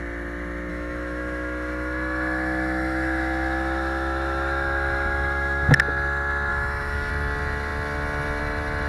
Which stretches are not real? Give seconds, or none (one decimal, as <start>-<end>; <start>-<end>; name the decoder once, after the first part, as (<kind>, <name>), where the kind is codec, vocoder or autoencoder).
0.7-5.7 (autoencoder, DAC-VAE); 6.5-7.1